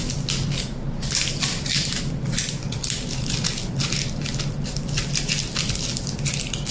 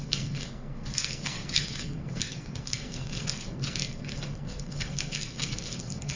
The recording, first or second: first